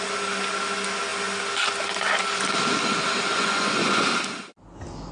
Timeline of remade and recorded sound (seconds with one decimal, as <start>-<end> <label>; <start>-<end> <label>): 0.0-3.3 recorded; 3.3-4.0 remade; 4.0-5.1 recorded